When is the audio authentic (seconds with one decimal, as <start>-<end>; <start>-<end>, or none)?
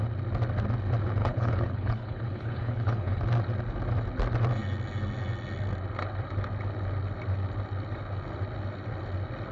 0.0-1.2; 3.2-9.5